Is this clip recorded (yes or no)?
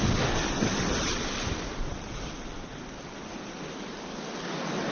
yes